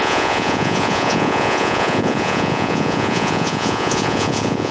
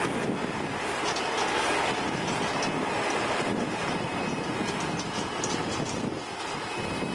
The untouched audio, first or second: second